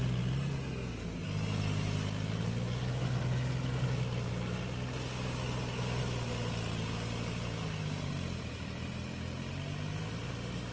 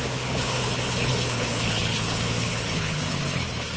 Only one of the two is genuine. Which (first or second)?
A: first